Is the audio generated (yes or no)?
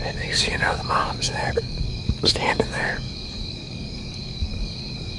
yes